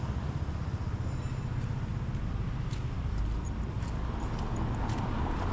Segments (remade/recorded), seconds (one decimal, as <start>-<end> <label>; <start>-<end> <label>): 0.0-5.5 recorded